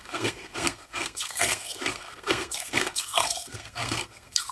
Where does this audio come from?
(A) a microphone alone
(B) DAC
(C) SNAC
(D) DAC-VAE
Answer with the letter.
C